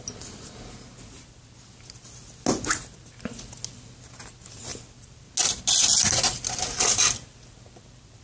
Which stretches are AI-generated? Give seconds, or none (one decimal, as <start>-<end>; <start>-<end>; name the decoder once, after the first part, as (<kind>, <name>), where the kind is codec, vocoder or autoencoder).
none

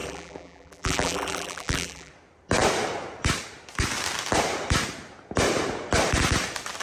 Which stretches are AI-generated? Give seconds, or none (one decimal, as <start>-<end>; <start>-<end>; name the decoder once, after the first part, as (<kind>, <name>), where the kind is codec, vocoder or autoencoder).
0.0-2.1 (vocoder, BigVGAN v2)